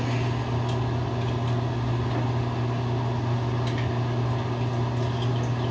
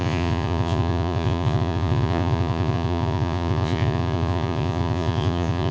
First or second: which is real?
first